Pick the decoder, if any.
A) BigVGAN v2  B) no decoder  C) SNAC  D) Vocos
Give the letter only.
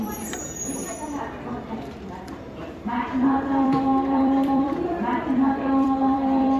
A